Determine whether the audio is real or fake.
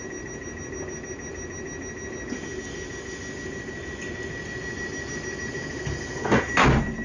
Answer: real